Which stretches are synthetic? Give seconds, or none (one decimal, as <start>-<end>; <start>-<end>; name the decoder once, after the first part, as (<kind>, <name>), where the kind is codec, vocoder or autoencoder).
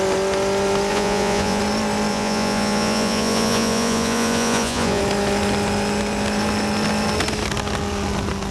0.9-1.6 (vocoder, Vocos); 2.1-5.0